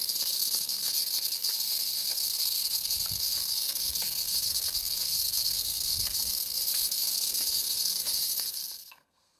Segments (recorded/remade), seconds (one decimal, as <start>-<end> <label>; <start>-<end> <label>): 0.0-9.4 remade